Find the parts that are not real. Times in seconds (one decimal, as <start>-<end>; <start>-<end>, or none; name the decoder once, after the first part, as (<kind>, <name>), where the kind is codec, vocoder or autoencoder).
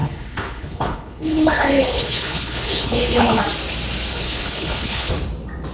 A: 0.0-3.4 (codec, HILCodec); 4.1-5.1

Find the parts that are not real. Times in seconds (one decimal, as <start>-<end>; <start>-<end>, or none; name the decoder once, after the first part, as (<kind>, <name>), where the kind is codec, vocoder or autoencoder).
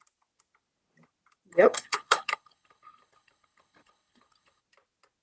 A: 1.5-4.6 (codec, HILCodec)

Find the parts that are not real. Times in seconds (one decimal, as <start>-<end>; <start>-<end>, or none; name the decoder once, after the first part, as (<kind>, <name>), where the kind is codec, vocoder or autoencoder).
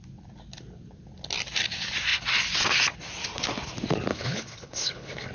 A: 4.1-5.3 (codec, HILCodec)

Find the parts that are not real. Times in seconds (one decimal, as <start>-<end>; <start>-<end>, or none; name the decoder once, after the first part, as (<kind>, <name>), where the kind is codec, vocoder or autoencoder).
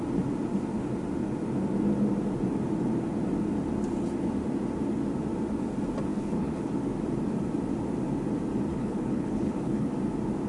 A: 6.1-6.7 (codec, HILCodec); 8.7-9.9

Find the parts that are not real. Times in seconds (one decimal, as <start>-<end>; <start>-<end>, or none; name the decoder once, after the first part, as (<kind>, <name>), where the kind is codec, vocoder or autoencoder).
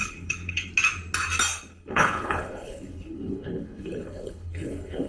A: 0.0-0.7 (codec, HILCodec); 1.7-5.1